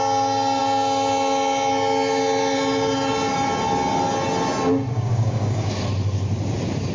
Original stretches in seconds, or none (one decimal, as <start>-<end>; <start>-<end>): 0.0-4.9; 5.7-6.9